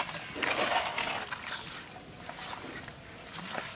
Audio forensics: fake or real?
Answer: real